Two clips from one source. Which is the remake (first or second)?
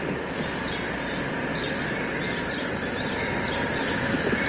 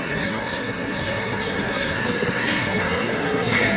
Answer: second